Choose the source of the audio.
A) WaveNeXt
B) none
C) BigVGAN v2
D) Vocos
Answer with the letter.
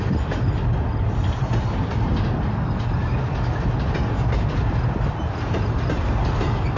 B